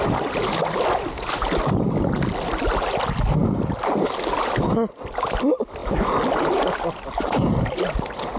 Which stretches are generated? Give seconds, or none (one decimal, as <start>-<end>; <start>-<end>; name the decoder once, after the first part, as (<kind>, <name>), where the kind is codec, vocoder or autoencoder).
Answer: none